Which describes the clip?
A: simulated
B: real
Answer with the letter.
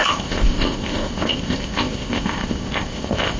A